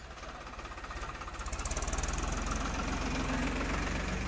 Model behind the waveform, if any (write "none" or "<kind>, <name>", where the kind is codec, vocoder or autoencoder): none